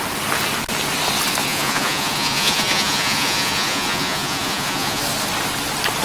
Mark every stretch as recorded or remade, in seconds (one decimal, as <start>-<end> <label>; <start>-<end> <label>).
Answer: 0.0-1.4 recorded; 1.4-5.0 remade; 5.0-6.0 recorded